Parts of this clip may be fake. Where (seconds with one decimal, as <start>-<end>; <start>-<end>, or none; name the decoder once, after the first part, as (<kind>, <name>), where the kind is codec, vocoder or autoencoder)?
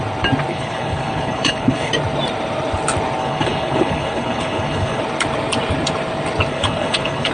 0.5-1.9 (codec, HILCodec); 3.2-5.0; 6.5-7.3